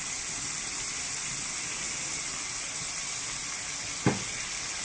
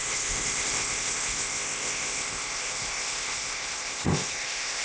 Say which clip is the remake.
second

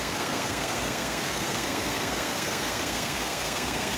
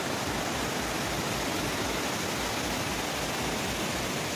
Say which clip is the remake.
first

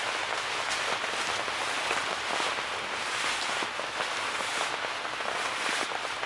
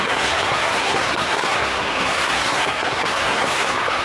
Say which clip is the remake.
second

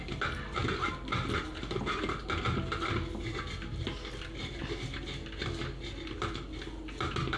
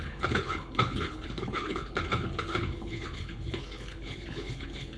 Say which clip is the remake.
second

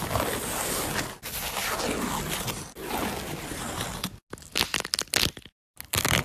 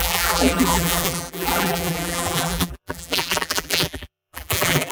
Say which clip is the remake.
second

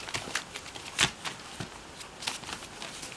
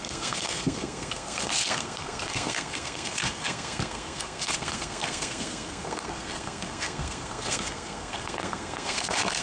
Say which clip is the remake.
second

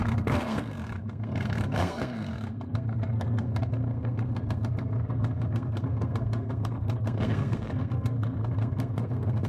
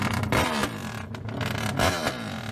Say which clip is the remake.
first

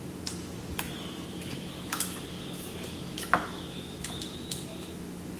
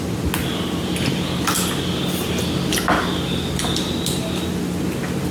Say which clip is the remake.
first